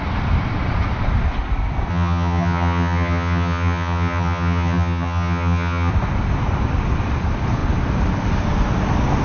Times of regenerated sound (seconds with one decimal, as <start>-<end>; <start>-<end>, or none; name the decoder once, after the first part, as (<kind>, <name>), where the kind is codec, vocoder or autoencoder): 1.9-5.9 (vocoder, HiFi-GAN)